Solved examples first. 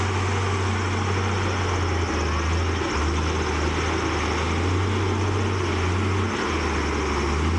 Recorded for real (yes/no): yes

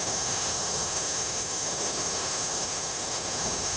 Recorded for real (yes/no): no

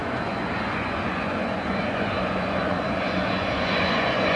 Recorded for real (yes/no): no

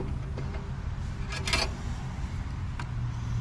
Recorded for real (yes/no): yes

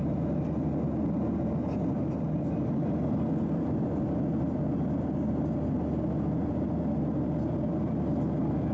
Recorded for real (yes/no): yes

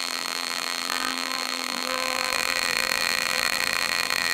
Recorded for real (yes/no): no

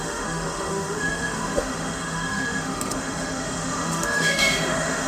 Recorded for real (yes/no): no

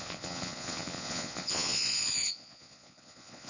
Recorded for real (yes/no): no